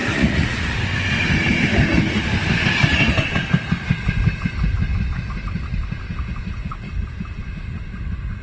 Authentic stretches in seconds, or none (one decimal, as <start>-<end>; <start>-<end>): 0.8-8.4